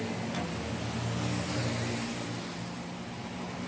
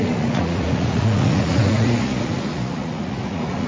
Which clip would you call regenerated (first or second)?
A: second